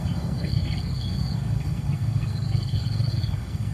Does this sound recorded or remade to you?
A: remade